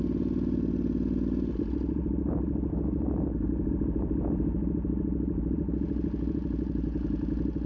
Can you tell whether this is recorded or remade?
recorded